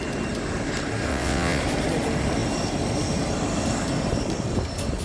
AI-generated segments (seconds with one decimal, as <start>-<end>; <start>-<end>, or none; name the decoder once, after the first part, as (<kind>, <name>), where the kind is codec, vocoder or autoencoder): 1.1-1.6 (vocoder, WaveNeXt)

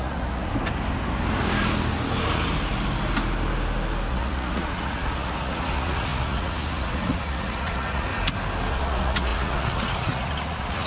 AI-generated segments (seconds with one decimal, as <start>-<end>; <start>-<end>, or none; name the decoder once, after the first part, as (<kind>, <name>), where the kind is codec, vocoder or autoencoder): 0.0-0.5 (vocoder, Vocos); 4.1-8.1; 8.7-10.9

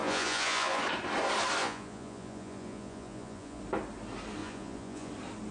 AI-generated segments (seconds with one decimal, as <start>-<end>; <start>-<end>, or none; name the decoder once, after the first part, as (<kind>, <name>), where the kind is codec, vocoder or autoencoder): 0.0-0.8 (vocoder, Vocos); 1.6-3.6; 4.4-5.1

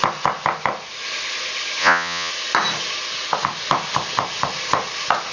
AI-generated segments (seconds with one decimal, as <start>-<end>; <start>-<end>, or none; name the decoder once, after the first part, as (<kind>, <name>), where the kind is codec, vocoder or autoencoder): 1.8-2.3 (vocoder, Vocos)

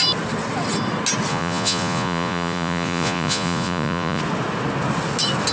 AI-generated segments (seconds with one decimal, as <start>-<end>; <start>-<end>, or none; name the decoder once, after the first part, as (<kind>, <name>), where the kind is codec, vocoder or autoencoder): 1.3-4.2 (vocoder, Vocos)

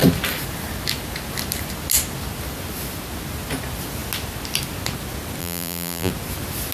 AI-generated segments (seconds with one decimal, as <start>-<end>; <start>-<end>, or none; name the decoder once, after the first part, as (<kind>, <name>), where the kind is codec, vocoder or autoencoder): 5.4-6.1 (vocoder, BigVGAN v2)

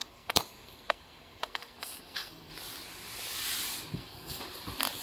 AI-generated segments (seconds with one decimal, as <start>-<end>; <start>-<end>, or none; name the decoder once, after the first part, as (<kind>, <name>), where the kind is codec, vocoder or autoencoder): 0.0-2.5 (codec, SNAC); 3.9-4.4